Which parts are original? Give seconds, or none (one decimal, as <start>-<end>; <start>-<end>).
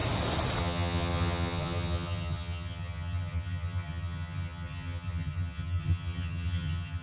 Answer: 0.0-0.6